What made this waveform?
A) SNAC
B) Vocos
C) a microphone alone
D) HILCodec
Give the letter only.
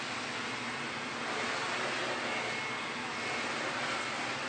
C